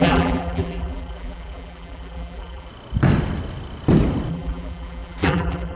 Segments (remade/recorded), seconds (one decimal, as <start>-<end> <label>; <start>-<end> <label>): 0.0-2.7 remade; 2.7-4.3 recorded; 4.3-5.8 remade